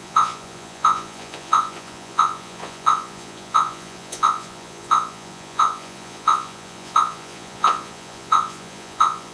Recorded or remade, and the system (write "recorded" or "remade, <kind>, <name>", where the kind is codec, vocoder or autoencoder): remade, vocoder, Vocos